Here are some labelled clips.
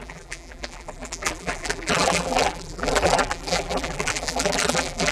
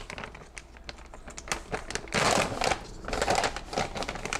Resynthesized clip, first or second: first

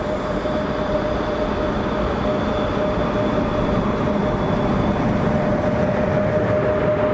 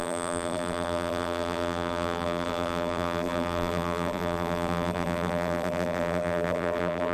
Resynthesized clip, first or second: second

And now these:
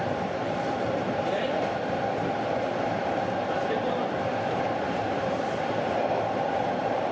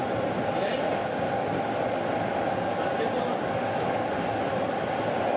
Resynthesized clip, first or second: first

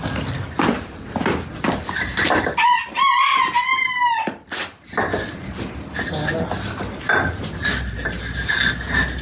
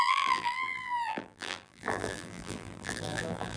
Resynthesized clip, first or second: second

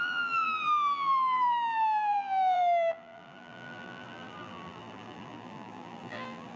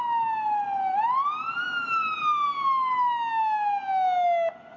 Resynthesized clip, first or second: first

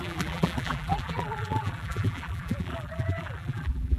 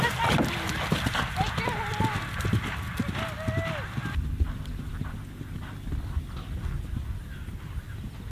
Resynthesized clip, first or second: first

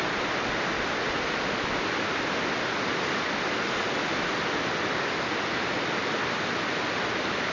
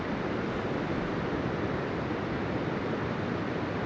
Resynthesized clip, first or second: second